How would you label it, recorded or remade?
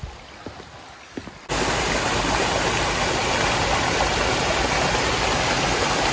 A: recorded